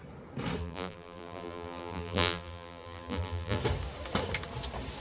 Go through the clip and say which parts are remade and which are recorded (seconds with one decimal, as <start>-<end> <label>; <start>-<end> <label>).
0.0-0.6 recorded; 0.6-3.6 remade; 3.6-5.0 recorded